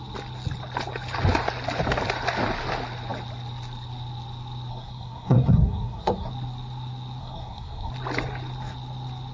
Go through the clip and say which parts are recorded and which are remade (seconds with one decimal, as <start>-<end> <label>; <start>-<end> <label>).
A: 0.0-4.7 recorded; 4.7-6.3 remade; 6.3-7.2 recorded; 7.2-7.9 remade; 7.9-9.3 recorded